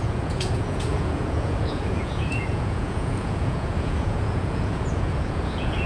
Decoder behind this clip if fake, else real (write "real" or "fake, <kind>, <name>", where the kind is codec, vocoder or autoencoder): fake, vocoder, Vocos